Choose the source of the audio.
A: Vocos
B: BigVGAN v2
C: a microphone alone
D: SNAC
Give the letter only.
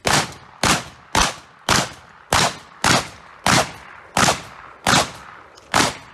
C